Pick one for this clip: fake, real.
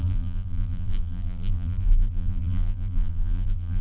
fake